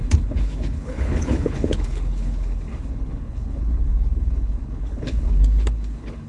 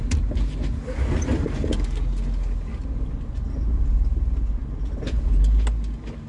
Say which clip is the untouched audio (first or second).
second